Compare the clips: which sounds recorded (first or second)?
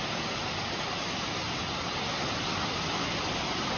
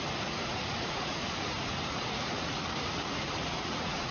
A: first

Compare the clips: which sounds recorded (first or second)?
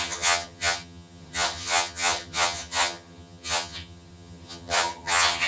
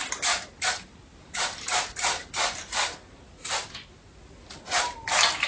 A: second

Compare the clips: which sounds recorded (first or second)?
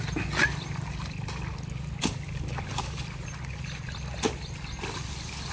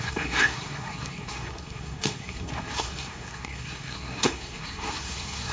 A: first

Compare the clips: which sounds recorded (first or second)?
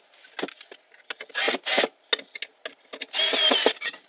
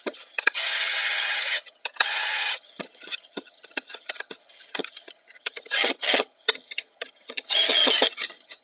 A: first